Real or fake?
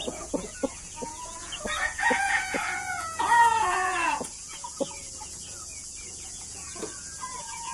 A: fake